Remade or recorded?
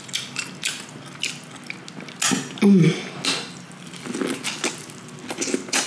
recorded